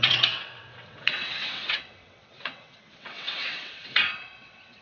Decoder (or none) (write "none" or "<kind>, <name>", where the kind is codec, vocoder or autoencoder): vocoder, WaveNeXt